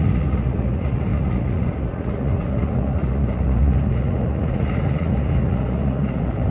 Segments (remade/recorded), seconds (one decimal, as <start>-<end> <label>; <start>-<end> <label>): 0.0-6.5 remade